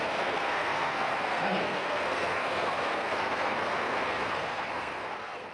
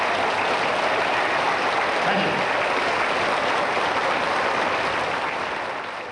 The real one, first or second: second